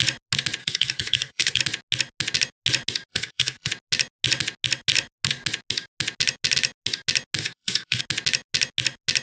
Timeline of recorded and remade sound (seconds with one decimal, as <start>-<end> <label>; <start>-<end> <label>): 0.0-0.6 recorded; 0.6-1.6 remade; 1.6-3.1 recorded; 3.1-3.7 remade; 3.7-7.4 recorded; 7.4-8.0 remade; 8.0-9.2 recorded